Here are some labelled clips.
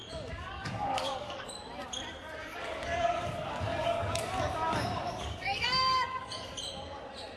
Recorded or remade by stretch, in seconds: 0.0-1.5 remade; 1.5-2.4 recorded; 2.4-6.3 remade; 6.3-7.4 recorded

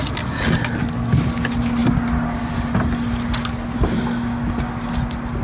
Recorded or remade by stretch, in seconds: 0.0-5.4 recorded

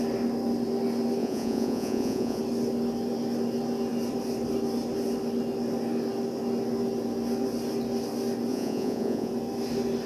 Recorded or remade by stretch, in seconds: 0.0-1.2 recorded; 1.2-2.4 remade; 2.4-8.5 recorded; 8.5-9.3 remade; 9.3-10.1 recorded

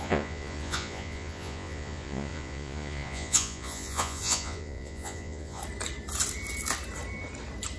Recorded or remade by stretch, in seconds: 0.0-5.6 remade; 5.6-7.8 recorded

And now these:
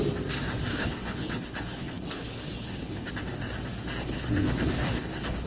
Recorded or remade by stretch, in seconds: 0.0-0.7 recorded; 0.7-3.1 remade; 3.1-4.0 recorded; 4.0-5.5 remade

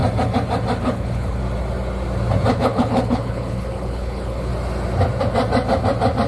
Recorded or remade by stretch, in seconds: 0.0-0.8 recorded; 0.8-1.4 remade; 1.4-2.5 recorded; 2.5-4.5 remade; 4.5-6.3 recorded

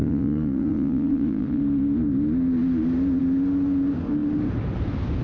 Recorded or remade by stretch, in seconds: 0.0-1.6 remade; 1.6-5.2 recorded

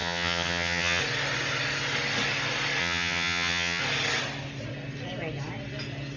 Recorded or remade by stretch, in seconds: 0.0-1.0 remade; 1.0-2.8 recorded; 2.8-3.8 remade; 3.8-6.2 recorded